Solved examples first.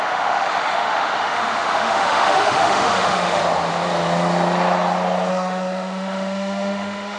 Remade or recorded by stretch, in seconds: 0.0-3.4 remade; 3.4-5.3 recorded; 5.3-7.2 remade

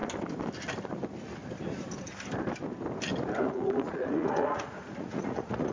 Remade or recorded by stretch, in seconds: 0.0-3.4 recorded; 3.4-5.7 remade

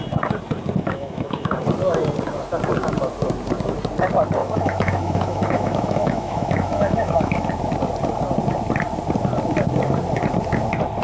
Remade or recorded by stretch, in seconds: 0.0-0.8 recorded; 0.8-1.5 remade; 1.5-4.4 recorded; 4.4-7.5 remade; 7.5-11.0 recorded

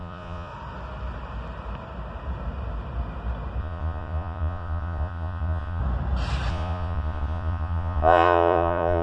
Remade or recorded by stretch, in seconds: 0.0-0.5 remade; 0.5-3.6 recorded; 3.6-5.8 remade; 5.8-6.5 recorded; 6.5-9.0 remade

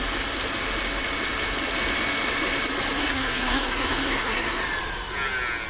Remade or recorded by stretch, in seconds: 0.0-3.0 recorded; 3.0-4.6 remade; 4.6-5.7 recorded

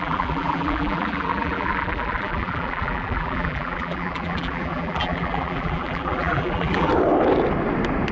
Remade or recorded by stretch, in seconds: 0.0-6.9 remade; 6.9-8.1 recorded

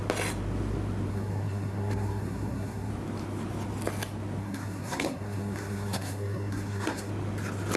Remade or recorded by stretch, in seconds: 0.0-1.1 recorded; 1.1-2.9 remade; 2.9-4.4 recorded; 4.4-7.1 remade; 7.1-7.8 recorded